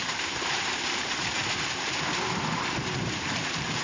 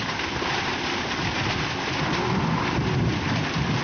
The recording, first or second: second